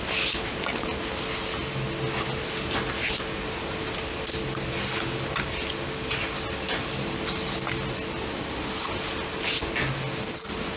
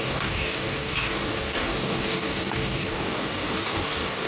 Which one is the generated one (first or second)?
second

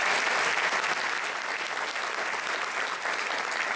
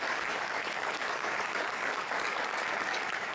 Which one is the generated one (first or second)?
second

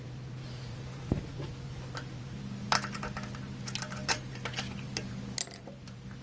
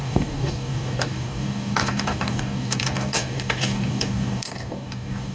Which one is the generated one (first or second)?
second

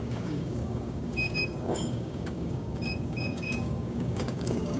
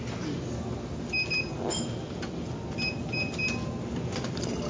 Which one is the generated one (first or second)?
first